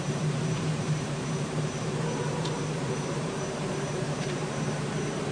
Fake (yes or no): yes